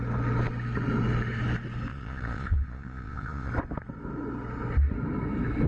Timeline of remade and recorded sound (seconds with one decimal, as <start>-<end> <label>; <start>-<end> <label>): 0.0-1.9 recorded; 1.9-3.5 remade; 3.5-5.7 recorded